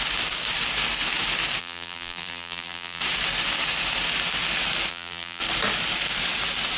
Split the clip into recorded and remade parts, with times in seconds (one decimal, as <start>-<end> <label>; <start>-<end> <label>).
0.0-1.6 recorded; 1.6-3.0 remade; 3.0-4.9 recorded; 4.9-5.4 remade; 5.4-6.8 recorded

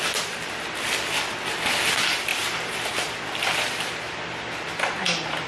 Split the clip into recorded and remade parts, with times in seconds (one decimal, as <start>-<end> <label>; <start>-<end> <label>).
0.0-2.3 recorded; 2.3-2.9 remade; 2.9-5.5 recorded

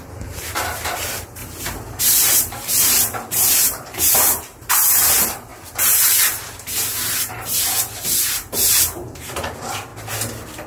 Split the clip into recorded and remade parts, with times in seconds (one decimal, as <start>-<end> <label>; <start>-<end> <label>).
0.0-1.4 remade; 1.4-2.0 recorded; 2.0-9.9 remade; 9.9-10.7 recorded

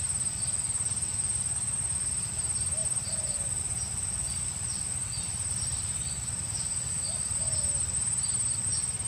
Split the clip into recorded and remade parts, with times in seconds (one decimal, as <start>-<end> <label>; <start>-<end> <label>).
0.0-9.1 recorded